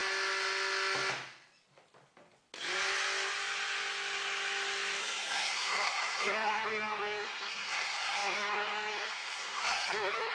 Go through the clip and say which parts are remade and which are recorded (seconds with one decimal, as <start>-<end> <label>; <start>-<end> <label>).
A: 0.0-5.0 recorded; 5.0-10.3 remade